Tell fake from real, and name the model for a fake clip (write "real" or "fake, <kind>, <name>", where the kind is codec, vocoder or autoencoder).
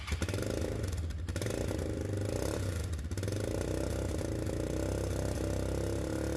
real